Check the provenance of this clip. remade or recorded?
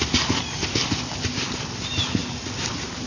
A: recorded